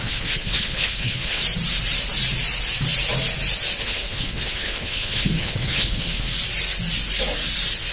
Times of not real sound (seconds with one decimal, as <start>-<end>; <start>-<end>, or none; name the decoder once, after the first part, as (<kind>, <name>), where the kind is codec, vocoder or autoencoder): 0.0-1.4 (codec, HILCodec); 3.8-6.3